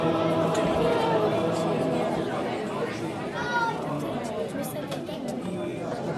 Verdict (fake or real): real